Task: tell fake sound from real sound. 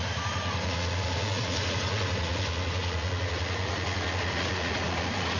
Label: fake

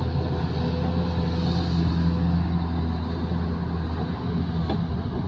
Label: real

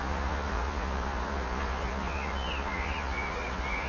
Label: fake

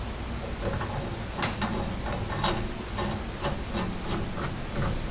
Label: real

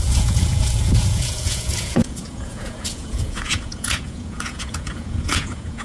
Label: fake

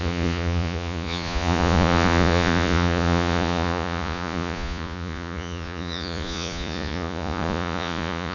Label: fake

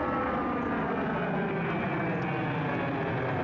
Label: real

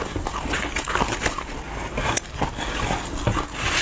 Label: real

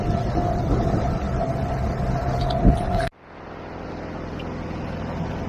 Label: real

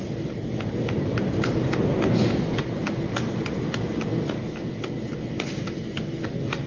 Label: real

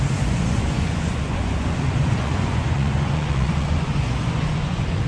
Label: fake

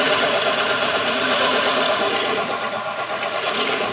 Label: fake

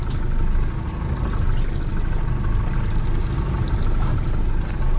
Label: real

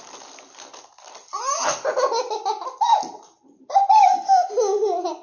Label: real